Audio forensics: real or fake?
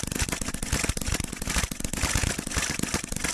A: real